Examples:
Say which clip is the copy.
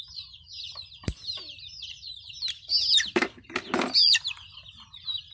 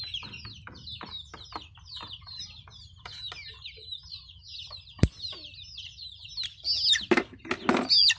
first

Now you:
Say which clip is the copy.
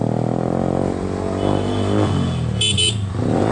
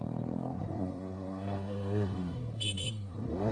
second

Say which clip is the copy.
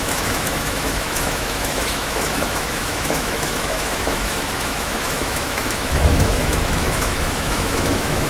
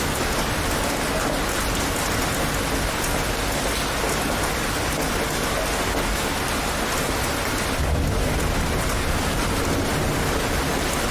first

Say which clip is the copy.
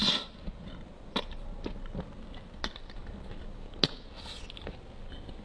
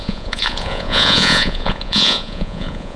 second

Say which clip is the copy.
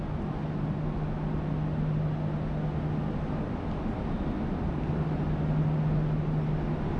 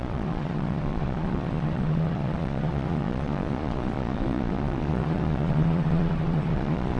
second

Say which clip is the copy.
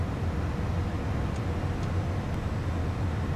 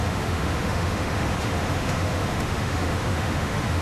second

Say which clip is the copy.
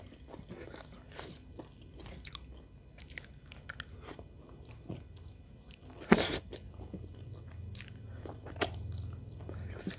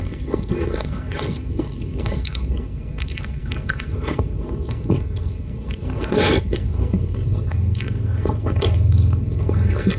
second